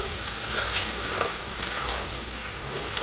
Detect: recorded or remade remade